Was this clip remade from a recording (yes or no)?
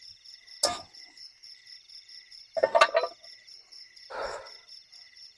no